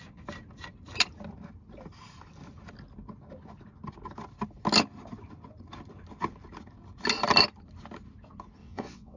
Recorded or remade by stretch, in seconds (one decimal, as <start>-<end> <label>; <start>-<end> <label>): 0.0-8.6 recorded; 8.6-9.2 remade